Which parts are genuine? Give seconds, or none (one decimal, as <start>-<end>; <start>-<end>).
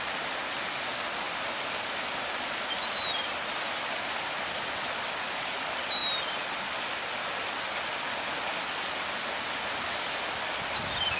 0.0-11.2